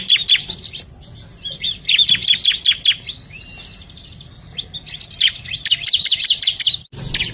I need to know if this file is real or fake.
real